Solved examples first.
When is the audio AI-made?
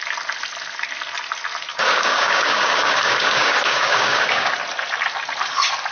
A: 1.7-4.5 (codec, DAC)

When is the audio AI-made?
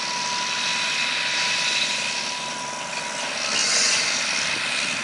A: 3.6-4.2 (vocoder, Vocos)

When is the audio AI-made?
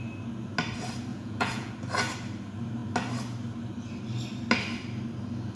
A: 1.1-1.7 (vocoder, Vocos)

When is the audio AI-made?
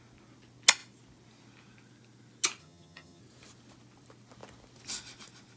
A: 2.6-3.2 (vocoder, HiFi-GAN)